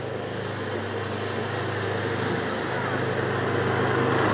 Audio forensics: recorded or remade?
recorded